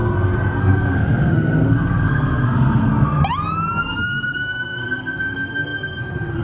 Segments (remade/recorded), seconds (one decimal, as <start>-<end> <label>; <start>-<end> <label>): 0.0-0.6 recorded; 0.6-2.9 remade; 2.9-3.8 recorded; 3.8-6.4 remade